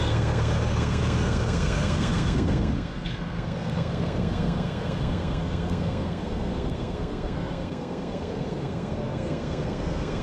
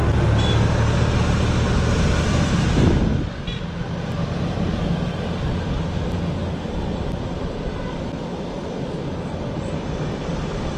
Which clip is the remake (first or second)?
first